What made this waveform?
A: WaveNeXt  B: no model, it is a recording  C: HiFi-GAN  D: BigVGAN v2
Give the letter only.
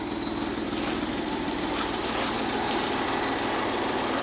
D